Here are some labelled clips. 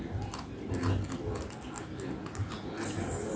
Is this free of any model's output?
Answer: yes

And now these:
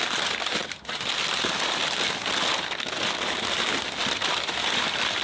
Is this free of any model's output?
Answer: yes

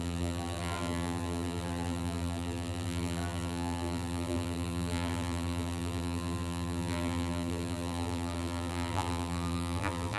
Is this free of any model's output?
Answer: no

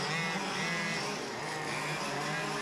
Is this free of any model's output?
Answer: yes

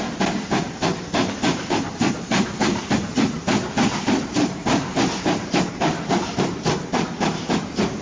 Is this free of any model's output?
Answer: no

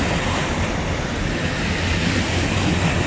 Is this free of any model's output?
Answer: no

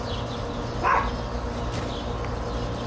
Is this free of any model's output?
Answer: yes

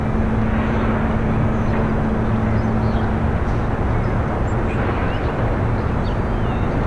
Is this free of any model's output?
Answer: yes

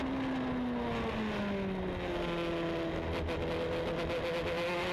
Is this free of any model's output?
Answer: yes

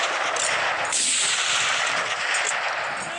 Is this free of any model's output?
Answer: yes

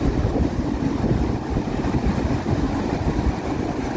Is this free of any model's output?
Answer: no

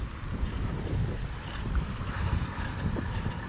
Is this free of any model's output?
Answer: no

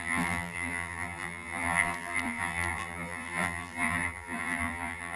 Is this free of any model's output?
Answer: no